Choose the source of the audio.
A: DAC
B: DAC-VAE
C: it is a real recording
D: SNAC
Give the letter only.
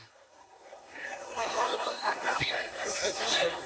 D